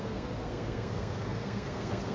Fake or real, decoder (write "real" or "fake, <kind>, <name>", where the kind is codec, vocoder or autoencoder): fake, codec, SNAC